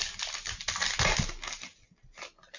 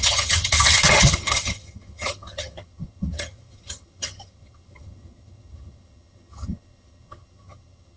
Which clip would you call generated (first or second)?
second